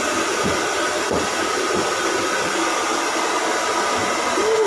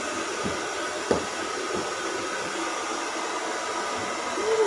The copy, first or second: first